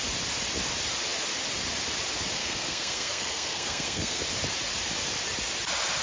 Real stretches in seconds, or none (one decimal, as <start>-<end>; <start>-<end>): 0.0-2.4; 4.2-6.0

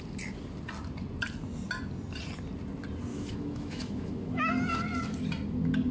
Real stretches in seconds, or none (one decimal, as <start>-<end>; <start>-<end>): 0.0-3.1; 4.5-5.9

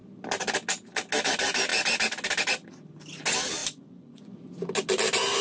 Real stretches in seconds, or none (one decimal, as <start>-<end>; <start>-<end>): 0.0-3.6; 4.4-5.4

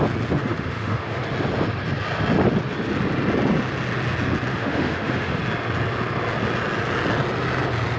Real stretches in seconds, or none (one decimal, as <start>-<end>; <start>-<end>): 0.0-0.4; 1.2-4.5; 5.4-8.0

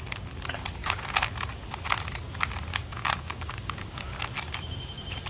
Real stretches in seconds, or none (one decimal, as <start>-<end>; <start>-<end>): 0.0-0.8; 1.3-2.7; 4.0-5.3

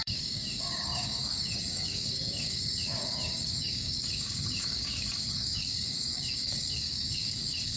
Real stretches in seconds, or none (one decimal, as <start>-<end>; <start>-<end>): none